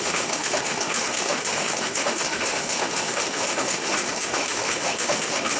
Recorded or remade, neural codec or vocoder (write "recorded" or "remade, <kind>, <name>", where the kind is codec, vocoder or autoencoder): remade, autoencoder, DAC-VAE